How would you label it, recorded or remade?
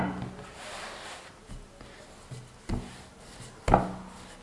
recorded